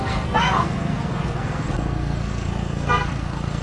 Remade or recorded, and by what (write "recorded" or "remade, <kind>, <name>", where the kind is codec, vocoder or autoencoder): remade, codec, SNAC